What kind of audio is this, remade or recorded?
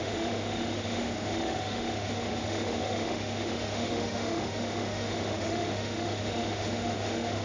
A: remade